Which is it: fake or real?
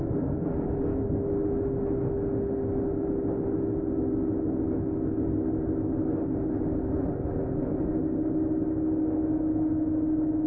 real